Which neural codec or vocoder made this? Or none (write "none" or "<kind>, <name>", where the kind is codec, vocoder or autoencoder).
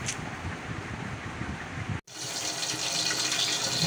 none